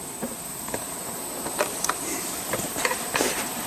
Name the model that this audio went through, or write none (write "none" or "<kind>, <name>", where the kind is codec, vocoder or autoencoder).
vocoder, BigVGAN v2